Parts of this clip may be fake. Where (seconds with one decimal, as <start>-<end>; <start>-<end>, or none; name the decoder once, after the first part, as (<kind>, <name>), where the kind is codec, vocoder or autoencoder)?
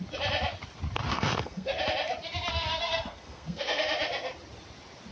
1.1-1.8 (codec, SNAC); 2.5-3.8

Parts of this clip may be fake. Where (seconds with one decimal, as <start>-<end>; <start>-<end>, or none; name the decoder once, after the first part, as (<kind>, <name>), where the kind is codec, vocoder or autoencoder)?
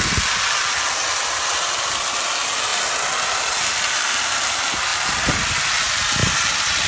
none